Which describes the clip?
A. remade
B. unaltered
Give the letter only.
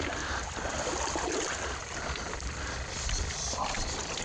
B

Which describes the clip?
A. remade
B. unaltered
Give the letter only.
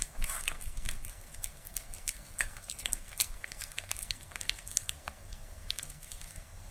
A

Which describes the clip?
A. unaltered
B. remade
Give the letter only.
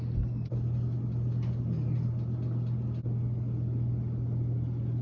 A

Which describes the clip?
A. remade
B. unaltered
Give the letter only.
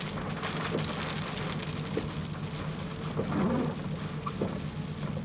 B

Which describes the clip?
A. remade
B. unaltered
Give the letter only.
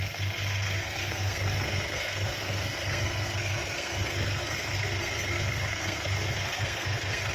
A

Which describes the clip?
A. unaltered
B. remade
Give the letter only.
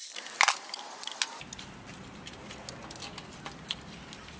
A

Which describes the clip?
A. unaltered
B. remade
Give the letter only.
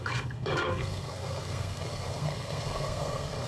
B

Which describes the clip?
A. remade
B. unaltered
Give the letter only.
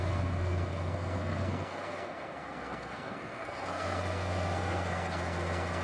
A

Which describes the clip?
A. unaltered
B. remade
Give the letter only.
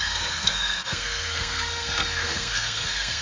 B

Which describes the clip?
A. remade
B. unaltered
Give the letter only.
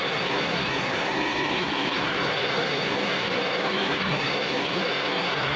A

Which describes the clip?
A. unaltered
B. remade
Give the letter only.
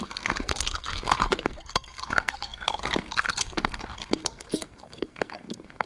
B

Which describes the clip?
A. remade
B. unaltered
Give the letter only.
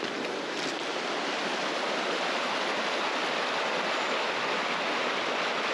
B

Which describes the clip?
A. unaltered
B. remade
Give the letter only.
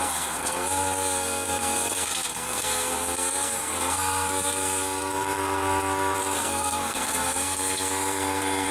B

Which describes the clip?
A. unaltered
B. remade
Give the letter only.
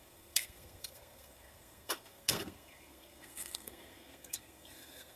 B